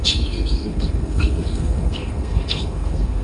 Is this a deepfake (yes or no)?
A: yes